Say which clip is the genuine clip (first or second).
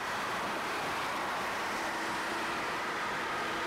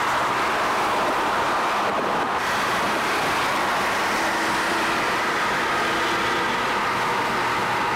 second